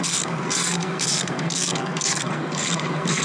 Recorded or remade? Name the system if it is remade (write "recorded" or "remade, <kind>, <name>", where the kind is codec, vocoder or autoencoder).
remade, codec, SNAC